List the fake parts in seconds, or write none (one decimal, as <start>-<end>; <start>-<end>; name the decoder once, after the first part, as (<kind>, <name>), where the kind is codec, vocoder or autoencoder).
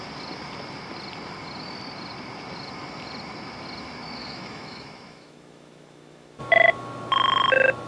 4.2-6.4 (autoencoder, DAC-VAE)